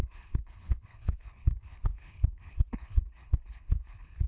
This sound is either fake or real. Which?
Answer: fake